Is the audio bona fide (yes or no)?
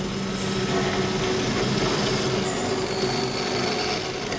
yes